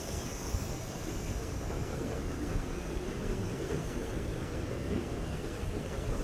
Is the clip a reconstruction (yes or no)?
yes